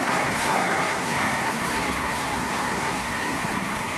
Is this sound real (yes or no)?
no